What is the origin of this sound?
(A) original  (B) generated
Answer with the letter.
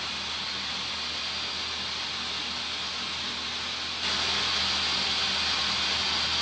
A